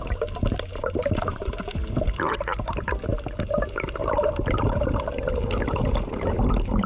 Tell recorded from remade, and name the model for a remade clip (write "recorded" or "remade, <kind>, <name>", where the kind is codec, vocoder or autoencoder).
remade, vocoder, BigVGAN v2